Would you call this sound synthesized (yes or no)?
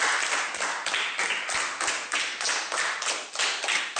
no